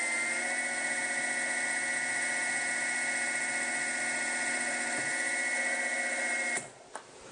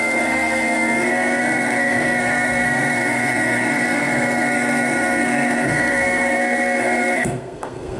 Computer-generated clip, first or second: second